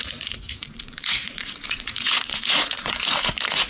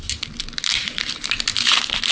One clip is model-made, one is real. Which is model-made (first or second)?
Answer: first